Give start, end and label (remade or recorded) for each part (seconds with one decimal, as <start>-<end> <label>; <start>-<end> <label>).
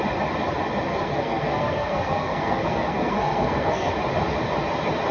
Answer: 0.0-0.9 recorded; 0.9-3.9 remade; 3.9-5.1 recorded